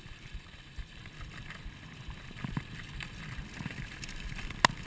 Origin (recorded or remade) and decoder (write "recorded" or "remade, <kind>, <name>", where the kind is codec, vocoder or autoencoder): recorded